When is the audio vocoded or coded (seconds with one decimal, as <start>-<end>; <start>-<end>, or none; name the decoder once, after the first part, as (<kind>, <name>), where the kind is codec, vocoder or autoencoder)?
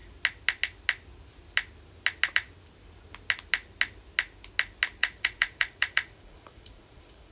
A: 5.0-7.3 (vocoder, Vocos)